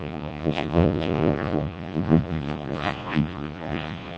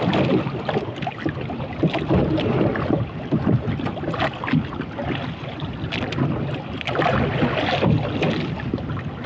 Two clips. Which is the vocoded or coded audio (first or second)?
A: first